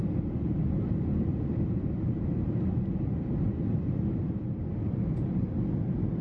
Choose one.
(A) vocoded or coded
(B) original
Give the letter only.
B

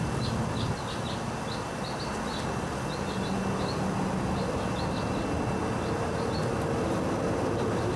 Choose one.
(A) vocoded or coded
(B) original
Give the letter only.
B